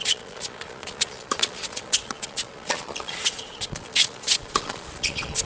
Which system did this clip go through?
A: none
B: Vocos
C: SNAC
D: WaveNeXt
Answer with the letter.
B